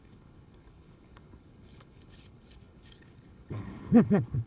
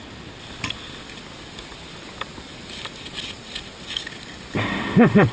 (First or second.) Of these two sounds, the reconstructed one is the first